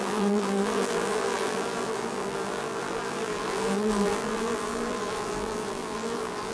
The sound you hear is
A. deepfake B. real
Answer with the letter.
A